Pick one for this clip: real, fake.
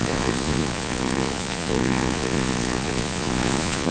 fake